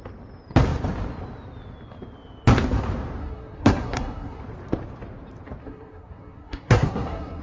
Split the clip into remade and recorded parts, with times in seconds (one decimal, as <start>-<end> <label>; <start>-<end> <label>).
0.0-3.2 recorded; 3.2-4.4 remade; 4.4-5.6 recorded; 5.6-7.4 remade